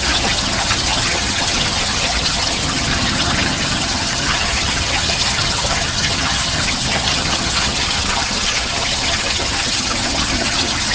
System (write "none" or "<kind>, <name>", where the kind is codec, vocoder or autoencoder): vocoder, HiFi-GAN